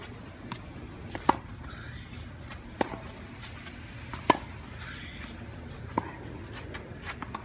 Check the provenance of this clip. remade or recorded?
recorded